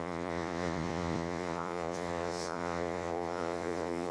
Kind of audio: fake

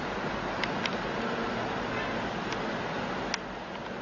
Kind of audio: real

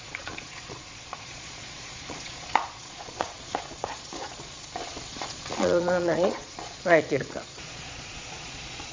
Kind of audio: fake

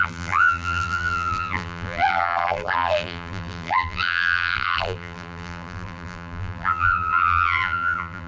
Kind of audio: fake